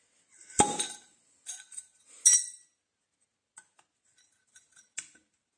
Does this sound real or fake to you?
real